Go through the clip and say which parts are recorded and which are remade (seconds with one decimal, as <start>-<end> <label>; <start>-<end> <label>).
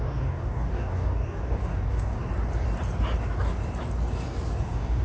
0.0-2.2 remade; 2.2-4.6 recorded; 4.6-5.0 remade